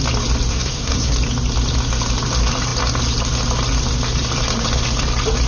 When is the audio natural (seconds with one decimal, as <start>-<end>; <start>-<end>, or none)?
0.0-0.5; 1.1-5.5